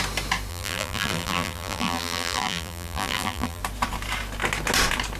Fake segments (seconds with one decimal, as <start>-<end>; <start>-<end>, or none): 0.5-3.6